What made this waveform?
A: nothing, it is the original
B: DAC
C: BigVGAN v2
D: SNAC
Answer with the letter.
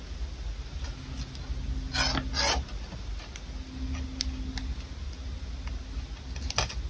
A